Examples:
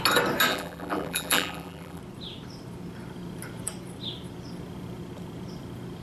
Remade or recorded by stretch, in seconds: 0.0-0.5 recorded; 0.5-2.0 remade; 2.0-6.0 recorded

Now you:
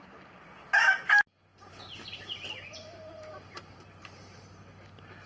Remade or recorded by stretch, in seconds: 0.0-1.5 recorded; 1.5-4.4 remade; 4.4-5.3 recorded